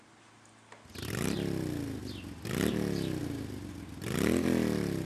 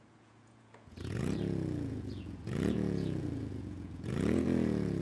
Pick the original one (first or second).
first